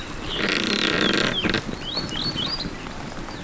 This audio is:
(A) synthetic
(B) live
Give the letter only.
B